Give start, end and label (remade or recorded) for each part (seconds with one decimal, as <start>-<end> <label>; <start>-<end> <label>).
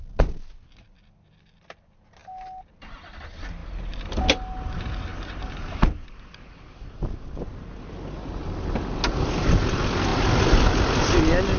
0.0-11.6 recorded